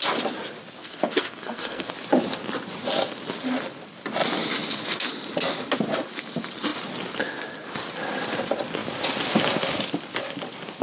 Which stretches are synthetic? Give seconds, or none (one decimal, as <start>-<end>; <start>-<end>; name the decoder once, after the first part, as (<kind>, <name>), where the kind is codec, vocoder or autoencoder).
0.8-1.9 (codec, SNAC)